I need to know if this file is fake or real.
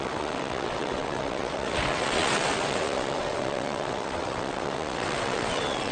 fake